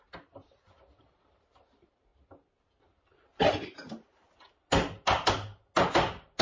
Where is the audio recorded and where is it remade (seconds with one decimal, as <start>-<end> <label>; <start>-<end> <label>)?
0.0-6.4 recorded